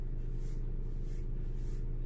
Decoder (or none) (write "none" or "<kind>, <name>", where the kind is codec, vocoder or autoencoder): none